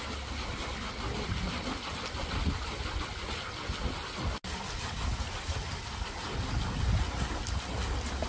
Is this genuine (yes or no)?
yes